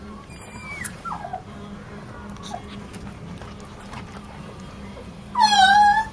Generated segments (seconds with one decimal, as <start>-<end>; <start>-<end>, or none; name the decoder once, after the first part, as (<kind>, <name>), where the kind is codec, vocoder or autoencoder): 0.0-1.3 (vocoder, BigVGAN v2); 3.8-6.1